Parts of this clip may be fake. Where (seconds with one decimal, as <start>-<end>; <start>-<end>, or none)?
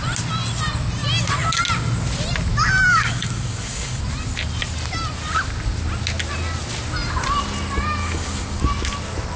2.9-4.0; 8.0-8.6